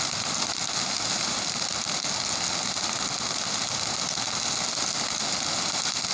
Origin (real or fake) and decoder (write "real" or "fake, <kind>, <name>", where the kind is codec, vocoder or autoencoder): real